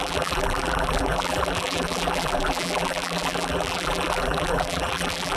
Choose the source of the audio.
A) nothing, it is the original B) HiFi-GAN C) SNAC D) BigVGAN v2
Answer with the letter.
D